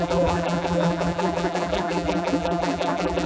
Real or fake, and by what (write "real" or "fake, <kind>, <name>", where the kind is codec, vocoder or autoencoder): fake, vocoder, BigVGAN v2